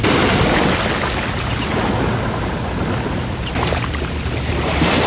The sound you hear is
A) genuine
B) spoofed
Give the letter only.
A